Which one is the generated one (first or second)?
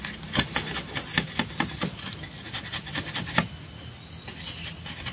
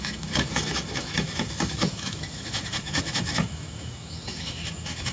second